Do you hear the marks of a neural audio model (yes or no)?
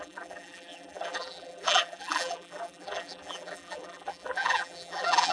yes